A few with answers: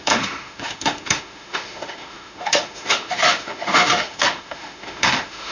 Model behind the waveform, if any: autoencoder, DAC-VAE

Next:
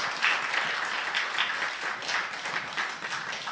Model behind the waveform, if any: none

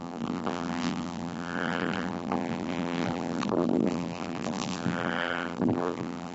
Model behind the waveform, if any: vocoder, BigVGAN v2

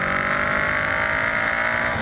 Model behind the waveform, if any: none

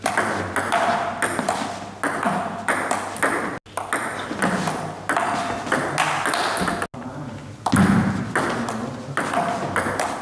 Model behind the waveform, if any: none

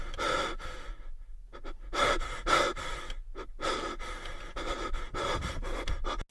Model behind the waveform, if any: none